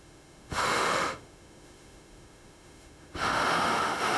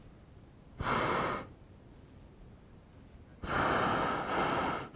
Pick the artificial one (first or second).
first